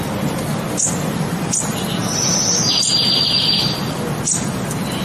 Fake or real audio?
real